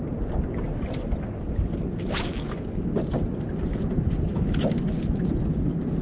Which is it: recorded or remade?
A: recorded